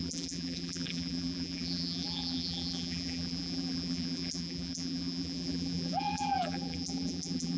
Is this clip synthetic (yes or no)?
yes